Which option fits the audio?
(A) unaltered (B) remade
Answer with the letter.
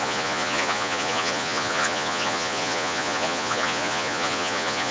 B